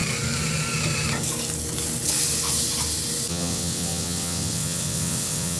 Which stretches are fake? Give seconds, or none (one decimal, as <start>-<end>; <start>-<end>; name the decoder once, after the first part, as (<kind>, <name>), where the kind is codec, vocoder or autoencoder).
3.3-5.6 (vocoder, WaveNeXt)